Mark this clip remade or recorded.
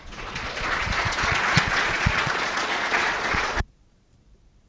remade